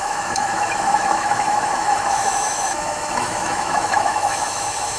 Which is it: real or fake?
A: fake